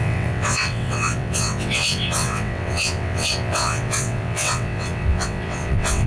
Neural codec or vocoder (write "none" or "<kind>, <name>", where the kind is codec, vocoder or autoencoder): vocoder, WaveNeXt